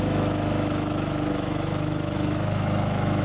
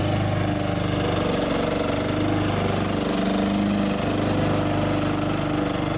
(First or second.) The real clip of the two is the second